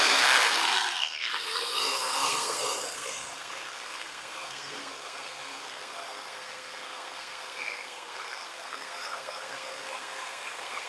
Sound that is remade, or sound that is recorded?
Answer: remade